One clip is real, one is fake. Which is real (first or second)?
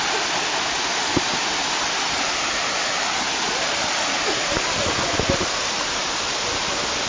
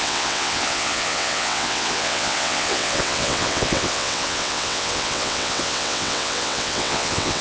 first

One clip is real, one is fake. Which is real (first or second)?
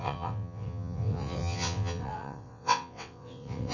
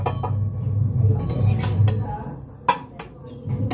second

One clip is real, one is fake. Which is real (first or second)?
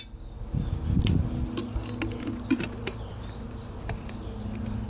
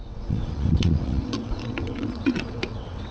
first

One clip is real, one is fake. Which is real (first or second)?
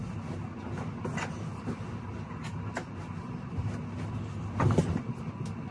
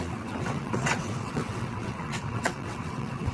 first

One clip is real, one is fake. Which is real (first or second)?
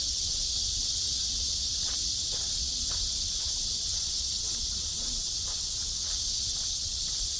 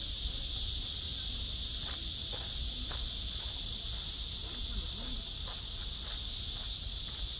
second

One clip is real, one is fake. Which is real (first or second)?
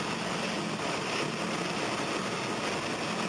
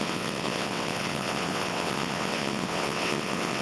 first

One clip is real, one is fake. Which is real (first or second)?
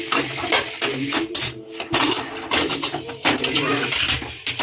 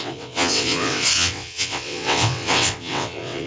first